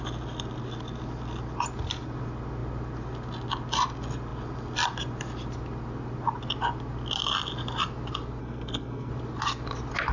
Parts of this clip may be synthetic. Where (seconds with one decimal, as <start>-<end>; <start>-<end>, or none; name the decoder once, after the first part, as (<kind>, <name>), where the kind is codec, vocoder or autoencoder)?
8.4-9.1 (codec, SNAC)